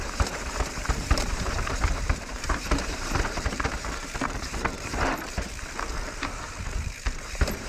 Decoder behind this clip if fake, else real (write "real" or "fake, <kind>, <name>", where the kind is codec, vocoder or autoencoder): fake, vocoder, BigVGAN v2